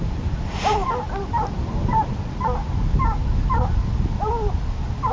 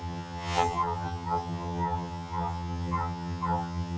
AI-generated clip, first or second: second